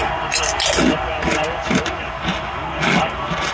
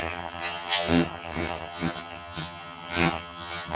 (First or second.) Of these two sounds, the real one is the first